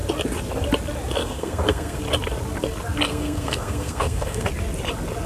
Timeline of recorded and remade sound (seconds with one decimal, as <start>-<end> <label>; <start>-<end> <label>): 0.0-1.2 recorded; 1.2-2.0 remade; 2.0-3.1 recorded; 3.1-4.5 remade; 4.5-5.3 recorded